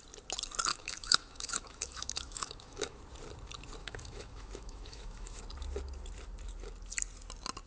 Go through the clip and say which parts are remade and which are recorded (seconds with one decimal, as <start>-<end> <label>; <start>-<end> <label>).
0.0-0.7 recorded; 0.7-3.0 remade; 3.0-3.8 recorded; 3.8-5.4 remade; 5.4-7.7 recorded